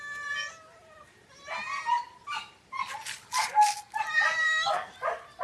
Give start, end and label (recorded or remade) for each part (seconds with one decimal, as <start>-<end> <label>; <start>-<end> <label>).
0.0-4.4 recorded; 4.4-4.9 remade; 4.9-5.4 recorded